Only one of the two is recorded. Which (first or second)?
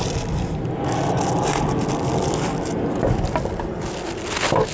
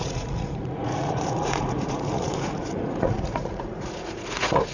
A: first